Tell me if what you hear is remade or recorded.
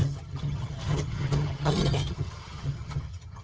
remade